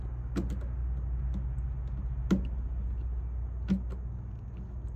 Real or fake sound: real